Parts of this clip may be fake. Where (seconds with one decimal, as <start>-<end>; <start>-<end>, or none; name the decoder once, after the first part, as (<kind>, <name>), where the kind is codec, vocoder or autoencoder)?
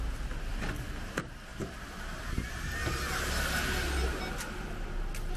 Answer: none